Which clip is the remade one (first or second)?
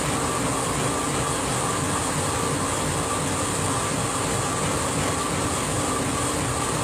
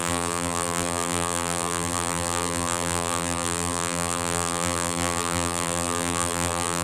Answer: second